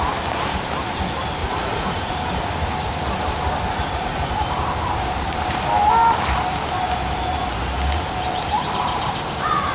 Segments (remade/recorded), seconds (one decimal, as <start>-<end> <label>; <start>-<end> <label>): 0.0-1.4 recorded; 1.4-2.1 remade; 2.1-3.7 recorded; 3.7-4.3 remade; 4.3-9.7 recorded